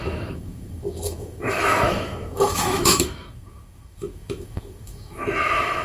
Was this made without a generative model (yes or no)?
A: no